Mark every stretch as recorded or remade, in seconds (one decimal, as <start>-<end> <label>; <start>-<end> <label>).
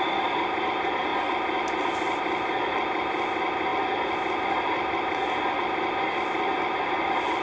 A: 0.0-1.1 remade; 1.1-1.9 recorded; 1.9-7.4 remade